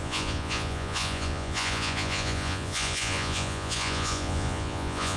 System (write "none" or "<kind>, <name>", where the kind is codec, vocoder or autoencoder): vocoder, Vocos